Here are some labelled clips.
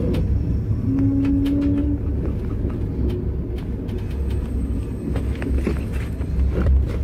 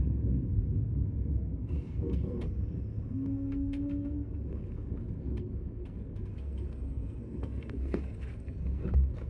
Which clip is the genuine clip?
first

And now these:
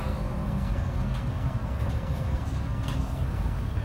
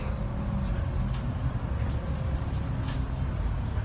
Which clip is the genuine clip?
second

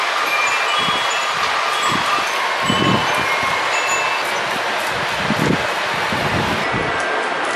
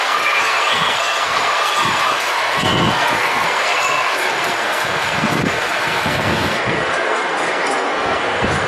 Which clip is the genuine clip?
first